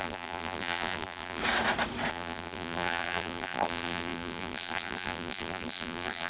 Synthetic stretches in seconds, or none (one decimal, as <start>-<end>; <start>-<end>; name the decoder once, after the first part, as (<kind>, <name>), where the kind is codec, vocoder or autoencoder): 0.0-1.4 (vocoder, BigVGAN v2); 2.1-6.3